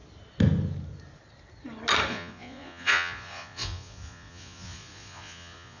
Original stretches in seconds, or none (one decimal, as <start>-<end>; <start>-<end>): 0.0-2.1